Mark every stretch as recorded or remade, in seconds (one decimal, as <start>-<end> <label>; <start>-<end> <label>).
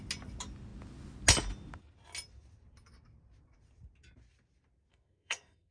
0.0-4.9 recorded; 4.9-5.7 remade